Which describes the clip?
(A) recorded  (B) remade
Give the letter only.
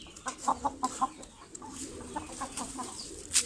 A